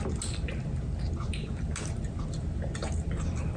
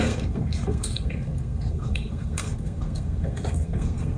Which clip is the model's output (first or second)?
second